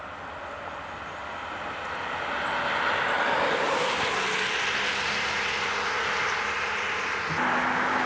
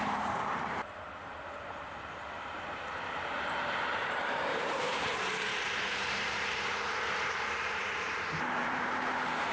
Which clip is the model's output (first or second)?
second